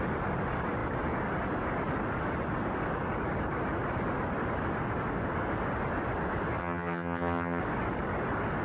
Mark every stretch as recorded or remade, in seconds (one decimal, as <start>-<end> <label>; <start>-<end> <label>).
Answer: 0.0-6.6 recorded; 6.6-7.6 remade; 7.6-8.6 recorded